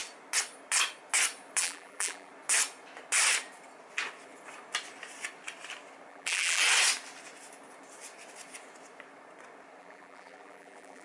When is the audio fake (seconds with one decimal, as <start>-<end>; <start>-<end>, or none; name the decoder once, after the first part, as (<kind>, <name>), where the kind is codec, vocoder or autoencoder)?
1.6-2.3 (vocoder, BigVGAN v2); 6.1-6.6; 9.8-11.0